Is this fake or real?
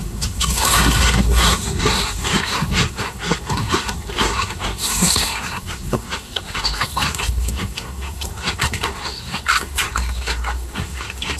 fake